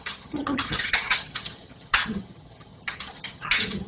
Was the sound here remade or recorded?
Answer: remade